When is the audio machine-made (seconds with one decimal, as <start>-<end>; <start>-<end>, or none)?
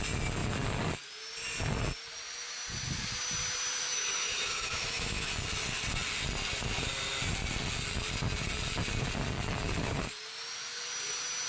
3.8-5.3